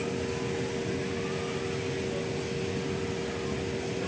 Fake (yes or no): no